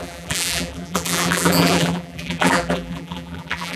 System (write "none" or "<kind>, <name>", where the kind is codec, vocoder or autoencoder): vocoder, BigVGAN v2